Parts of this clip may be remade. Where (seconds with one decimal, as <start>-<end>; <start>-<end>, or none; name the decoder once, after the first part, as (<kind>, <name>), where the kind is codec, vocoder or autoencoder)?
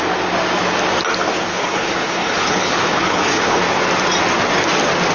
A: 1.5-3.6 (codec, HILCodec)